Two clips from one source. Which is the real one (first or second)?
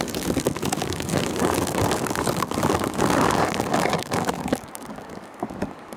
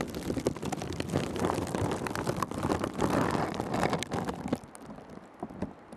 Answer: second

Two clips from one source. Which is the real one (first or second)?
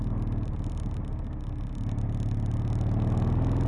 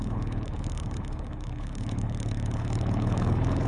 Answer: first